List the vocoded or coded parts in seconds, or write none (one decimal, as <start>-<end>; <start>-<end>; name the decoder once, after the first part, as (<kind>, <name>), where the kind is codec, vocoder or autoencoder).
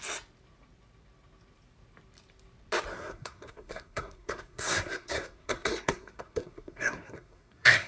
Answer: 2.9-7.9 (codec, SNAC)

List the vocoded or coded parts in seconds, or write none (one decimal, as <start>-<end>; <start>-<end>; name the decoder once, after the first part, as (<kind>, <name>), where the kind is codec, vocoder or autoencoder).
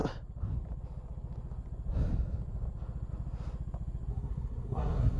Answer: 4.1-5.2 (codec, SNAC)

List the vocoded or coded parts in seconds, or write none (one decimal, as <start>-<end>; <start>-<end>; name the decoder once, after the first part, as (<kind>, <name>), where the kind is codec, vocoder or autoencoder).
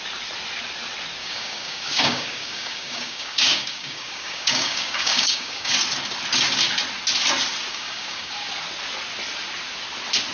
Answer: 1.2-5.7 (codec, DAC); 7.7-8.3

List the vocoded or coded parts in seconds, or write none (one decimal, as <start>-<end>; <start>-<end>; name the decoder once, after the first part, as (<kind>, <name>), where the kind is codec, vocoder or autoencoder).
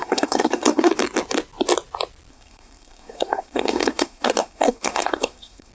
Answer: 0.0-0.9 (codec, SNAC); 2.3-5.7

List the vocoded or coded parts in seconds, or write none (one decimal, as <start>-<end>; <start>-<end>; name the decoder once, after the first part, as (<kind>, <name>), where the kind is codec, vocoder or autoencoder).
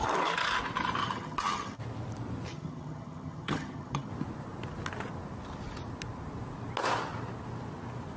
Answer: 1.0-1.8 (vocoder, HiFi-GAN); 2.5-4.1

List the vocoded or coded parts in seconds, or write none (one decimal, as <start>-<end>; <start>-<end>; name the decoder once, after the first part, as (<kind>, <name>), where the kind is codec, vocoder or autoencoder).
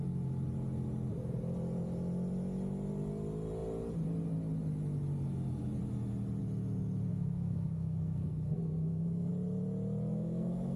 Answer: 7.1-9.3 (codec, SNAC); 10.1-10.8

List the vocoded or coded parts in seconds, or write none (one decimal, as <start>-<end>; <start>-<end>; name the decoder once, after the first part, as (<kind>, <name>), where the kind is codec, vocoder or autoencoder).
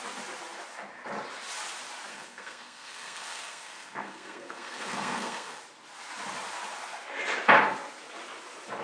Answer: 2.1-5.6 (codec, SNAC)